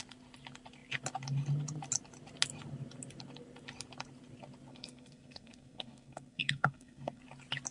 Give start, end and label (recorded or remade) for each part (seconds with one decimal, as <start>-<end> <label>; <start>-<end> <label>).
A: 0.0-4.7 recorded; 4.7-7.2 remade; 7.2-7.7 recorded